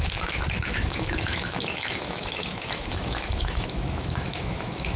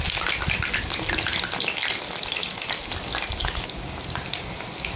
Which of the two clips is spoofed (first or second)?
first